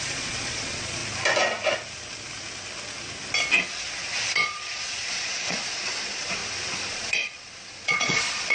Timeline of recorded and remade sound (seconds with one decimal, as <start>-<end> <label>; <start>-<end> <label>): 0.0-1.0 remade; 1.0-4.3 recorded; 4.3-6.4 remade; 6.4-6.9 recorded; 6.9-8.5 remade